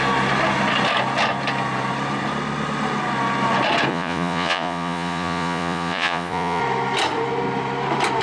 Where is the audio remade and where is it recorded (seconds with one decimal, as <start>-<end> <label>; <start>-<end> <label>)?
0.0-3.9 recorded; 3.9-6.6 remade; 6.6-8.2 recorded